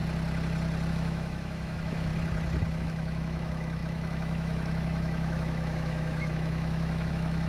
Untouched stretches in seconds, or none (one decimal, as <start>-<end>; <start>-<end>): 0.0-0.9; 2.1-2.8